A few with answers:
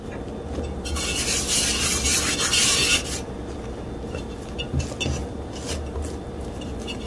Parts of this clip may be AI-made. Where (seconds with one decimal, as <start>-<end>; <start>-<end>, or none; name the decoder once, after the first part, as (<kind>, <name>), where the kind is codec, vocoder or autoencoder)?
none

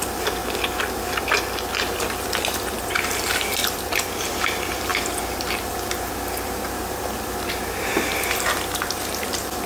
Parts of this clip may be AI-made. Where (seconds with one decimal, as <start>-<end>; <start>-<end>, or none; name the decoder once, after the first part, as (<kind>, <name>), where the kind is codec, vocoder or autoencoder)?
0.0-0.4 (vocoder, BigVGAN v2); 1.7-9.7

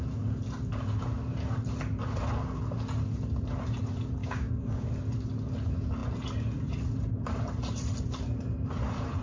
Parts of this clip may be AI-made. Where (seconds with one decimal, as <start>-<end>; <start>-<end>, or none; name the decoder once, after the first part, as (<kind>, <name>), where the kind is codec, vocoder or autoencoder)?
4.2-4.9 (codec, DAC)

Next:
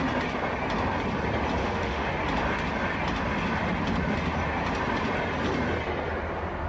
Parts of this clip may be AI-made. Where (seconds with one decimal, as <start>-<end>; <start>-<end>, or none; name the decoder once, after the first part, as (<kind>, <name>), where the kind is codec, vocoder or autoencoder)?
1.6-2.1 (autoencoder, DAC-VAE)

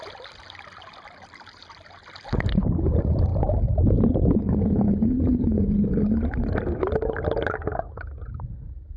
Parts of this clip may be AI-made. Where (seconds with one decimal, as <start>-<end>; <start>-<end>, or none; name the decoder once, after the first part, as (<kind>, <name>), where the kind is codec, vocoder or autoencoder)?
none

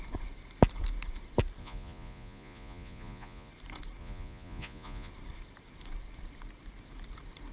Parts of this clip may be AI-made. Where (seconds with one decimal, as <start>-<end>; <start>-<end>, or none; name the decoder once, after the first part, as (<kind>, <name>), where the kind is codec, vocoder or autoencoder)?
1.6-3.5 (vocoder, Vocos); 4.0-5.1

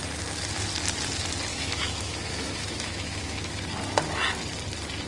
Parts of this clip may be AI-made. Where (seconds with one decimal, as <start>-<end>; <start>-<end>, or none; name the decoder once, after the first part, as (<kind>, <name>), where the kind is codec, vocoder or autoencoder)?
1.5-3.6 (autoencoder, DAC-VAE)